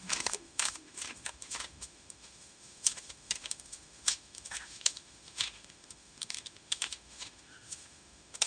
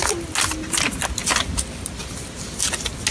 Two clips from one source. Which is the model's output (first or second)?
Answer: first